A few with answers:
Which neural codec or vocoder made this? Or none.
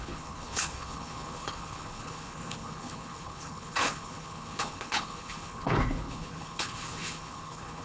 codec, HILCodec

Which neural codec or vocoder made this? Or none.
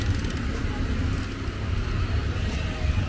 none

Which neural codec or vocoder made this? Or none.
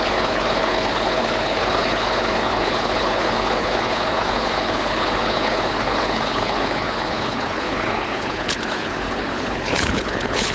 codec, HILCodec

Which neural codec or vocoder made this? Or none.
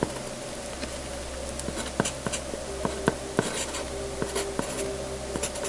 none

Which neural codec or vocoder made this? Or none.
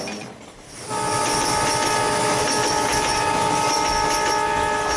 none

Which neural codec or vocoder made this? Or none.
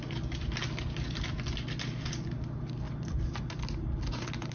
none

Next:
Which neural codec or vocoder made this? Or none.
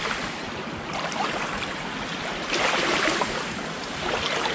none